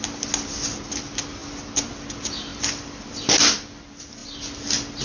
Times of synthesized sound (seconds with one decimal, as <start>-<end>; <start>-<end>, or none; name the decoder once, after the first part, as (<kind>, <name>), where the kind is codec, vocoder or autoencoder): none